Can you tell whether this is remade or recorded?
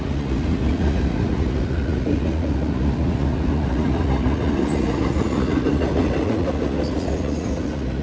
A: remade